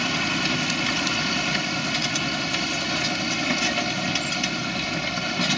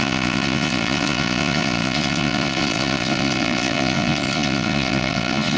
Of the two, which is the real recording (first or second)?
first